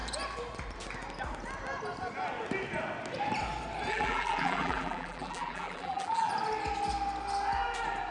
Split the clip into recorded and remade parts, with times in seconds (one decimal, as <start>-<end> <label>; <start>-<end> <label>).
0.0-3.9 recorded; 3.9-6.3 remade; 6.3-8.1 recorded